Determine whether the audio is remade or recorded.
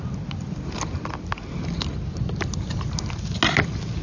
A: recorded